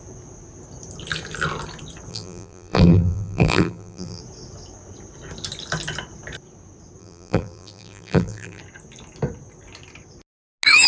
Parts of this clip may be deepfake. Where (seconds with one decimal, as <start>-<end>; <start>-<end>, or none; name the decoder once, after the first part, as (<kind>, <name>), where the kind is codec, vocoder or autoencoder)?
2.1-4.2 (vocoder, BigVGAN v2); 7.0-8.6